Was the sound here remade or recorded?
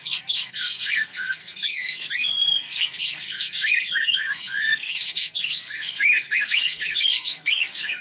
remade